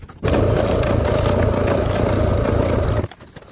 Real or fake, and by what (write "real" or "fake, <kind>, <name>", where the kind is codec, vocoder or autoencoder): real